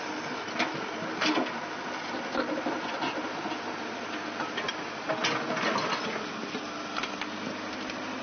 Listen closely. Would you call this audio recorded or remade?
recorded